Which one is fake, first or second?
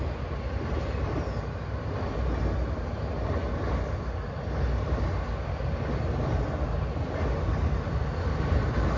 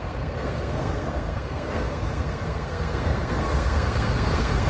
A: second